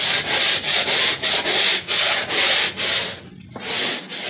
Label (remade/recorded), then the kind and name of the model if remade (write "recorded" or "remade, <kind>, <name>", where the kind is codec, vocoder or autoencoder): recorded